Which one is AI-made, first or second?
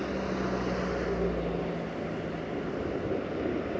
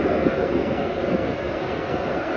second